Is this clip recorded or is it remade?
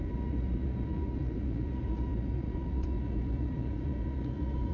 remade